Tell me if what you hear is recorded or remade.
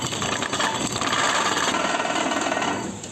remade